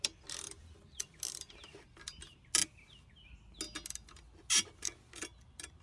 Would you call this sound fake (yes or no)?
no